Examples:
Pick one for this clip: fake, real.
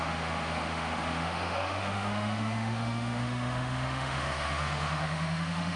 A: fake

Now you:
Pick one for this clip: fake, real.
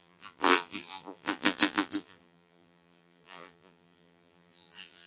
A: fake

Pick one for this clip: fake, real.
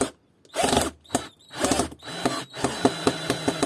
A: real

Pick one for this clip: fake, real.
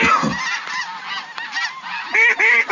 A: real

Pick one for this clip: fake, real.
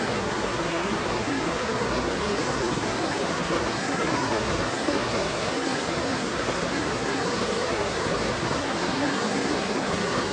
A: fake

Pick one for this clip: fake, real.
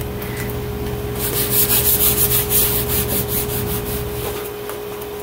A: real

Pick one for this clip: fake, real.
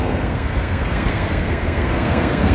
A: fake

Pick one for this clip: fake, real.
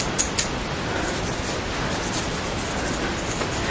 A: real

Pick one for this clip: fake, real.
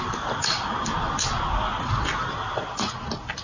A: real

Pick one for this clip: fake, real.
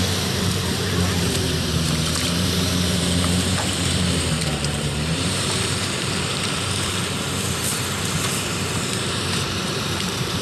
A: fake